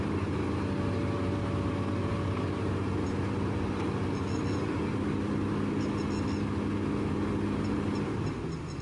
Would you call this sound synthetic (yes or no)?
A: no